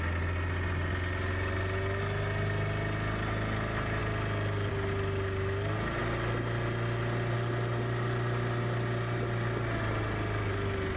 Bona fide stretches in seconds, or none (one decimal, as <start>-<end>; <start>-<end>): 0.0-11.0